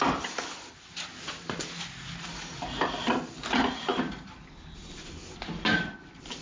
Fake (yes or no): no